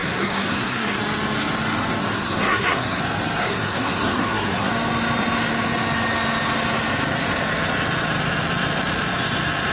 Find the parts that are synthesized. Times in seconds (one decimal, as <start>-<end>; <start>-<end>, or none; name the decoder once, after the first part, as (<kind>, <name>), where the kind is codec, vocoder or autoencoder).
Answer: 0.0-1.0 (codec, SNAC); 2.0-3.0; 3.4-4.7